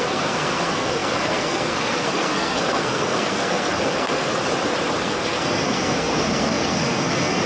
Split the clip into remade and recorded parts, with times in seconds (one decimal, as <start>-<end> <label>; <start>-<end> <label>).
0.0-4.3 remade; 4.3-5.0 recorded; 5.0-7.5 remade